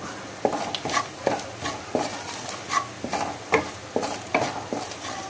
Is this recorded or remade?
recorded